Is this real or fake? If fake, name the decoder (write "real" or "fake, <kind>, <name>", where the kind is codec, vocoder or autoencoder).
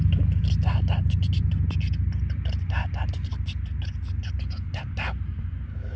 real